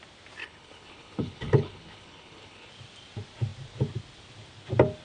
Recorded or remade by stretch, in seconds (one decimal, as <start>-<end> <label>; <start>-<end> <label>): 0.0-0.4 recorded; 0.4-2.7 remade; 2.7-5.0 recorded